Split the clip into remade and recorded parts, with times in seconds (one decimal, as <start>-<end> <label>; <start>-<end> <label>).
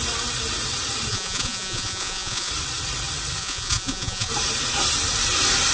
0.0-1.1 recorded; 1.1-2.5 remade; 2.5-3.4 recorded; 3.4-4.3 remade; 4.3-5.7 recorded